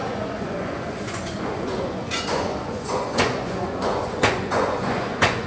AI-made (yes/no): yes